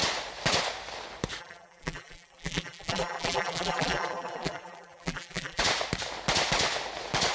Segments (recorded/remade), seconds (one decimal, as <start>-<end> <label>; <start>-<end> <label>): 0.0-1.4 recorded; 1.4-5.6 remade; 5.6-7.3 recorded